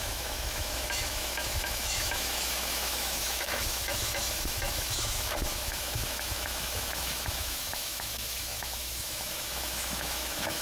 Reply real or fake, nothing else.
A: fake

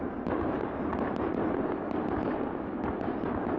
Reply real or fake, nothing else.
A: real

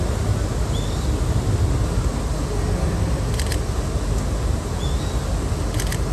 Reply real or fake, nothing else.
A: real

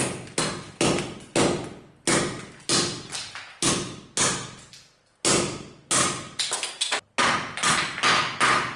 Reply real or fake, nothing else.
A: real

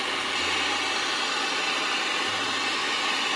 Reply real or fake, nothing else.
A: real